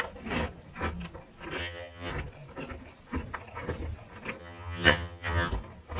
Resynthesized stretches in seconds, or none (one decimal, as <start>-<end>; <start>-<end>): 1.6-2.1; 4.4-5.5